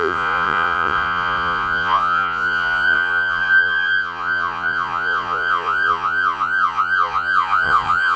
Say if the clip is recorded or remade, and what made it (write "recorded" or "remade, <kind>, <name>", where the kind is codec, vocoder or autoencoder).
remade, vocoder, Vocos